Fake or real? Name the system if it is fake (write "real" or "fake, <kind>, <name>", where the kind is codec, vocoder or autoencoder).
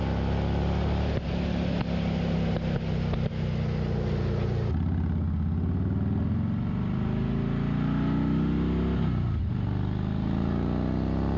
real